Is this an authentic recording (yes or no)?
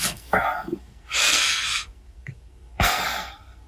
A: no